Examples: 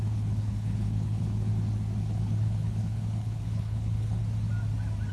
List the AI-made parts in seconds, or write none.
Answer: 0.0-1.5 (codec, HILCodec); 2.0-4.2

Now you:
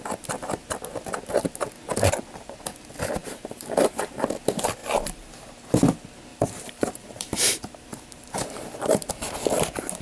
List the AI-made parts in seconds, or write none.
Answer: 3.2-4.2 (vocoder, BigVGAN v2); 4.8-5.3; 6.3-9.1

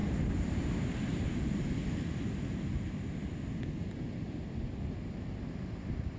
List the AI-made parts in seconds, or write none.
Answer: none

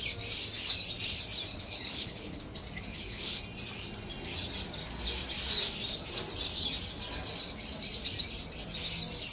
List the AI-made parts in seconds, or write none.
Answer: 1.5-2.4 (codec, HILCodec); 2.9-3.4

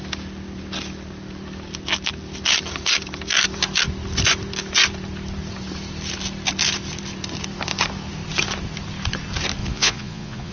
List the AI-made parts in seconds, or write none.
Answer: 9.6-10.5 (vocoder, Vocos)

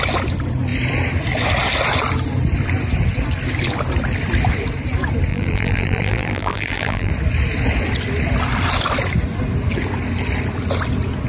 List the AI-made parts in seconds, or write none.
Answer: 5.3-7.1 (vocoder, BigVGAN v2)

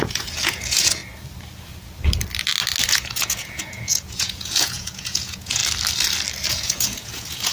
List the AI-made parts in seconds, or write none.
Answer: 0.0-1.0 (vocoder, Vocos); 2.9-5.6; 6.5-7.5